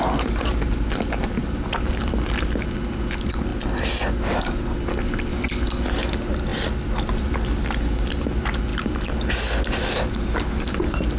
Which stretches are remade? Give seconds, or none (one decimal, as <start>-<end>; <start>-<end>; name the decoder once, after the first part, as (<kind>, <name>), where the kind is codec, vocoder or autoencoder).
1.4-2.1 (vocoder, BigVGAN v2)